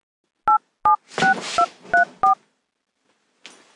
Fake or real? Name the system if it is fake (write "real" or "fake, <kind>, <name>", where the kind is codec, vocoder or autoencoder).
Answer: real